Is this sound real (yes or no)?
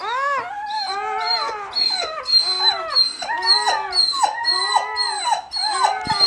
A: yes